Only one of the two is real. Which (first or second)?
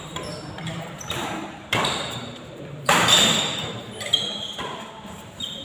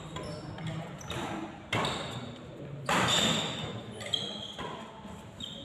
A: second